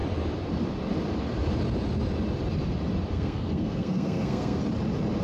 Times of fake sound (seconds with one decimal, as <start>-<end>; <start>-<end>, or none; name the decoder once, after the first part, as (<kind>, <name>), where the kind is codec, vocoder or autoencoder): 3.1-4.6 (codec, SNAC)